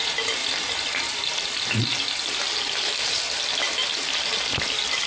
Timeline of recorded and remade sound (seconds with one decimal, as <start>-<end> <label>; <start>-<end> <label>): 0.0-5.1 recorded